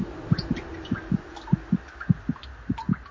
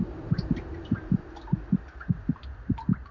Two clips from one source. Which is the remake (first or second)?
second